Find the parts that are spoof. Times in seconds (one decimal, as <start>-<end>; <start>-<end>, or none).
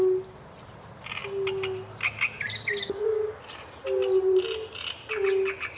none